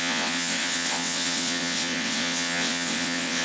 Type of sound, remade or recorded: remade